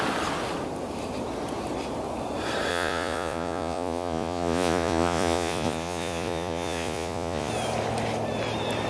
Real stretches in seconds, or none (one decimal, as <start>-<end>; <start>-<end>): 0.0-2.7; 7.5-8.9